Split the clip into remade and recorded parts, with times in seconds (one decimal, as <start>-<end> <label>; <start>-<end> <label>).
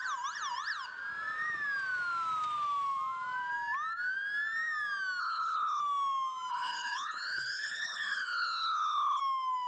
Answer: 0.0-5.2 recorded; 5.2-5.8 remade; 5.8-6.5 recorded; 6.5-9.2 remade; 9.2-9.7 recorded